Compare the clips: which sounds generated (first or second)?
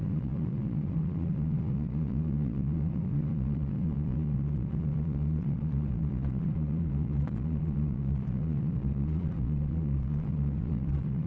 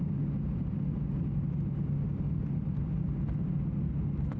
first